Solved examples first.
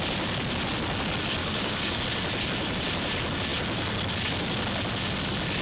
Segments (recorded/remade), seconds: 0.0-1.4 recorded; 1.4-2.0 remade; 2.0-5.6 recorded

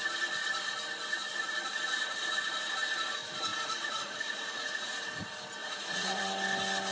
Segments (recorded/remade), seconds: 0.0-3.5 recorded; 3.5-4.9 remade; 4.9-5.6 recorded; 5.6-6.2 remade; 6.2-6.9 recorded

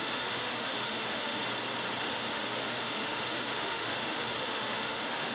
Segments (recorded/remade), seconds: 0.0-1.4 remade; 1.4-2.0 recorded; 2.0-5.3 remade

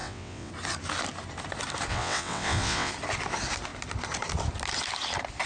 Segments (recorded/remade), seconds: 0.0-0.5 remade; 0.5-1.9 recorded; 1.9-2.9 remade; 2.9-5.5 recorded

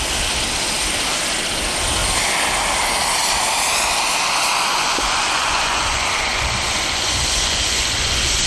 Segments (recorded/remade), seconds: 0.0-4.7 recorded; 4.7-8.5 remade

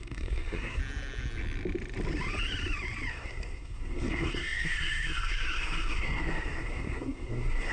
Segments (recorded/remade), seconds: 0.0-0.8 remade; 0.8-3.1 recorded; 3.1-7.7 remade

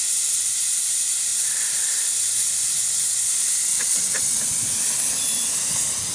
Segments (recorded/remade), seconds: 0.0-3.7 recorded; 3.7-4.4 remade; 4.4-6.1 recorded

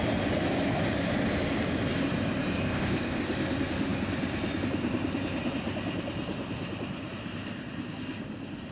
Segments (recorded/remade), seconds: 0.0-2.6 recorded; 2.6-3.2 remade; 3.2-8.7 recorded